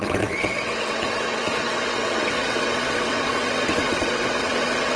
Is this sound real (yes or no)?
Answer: no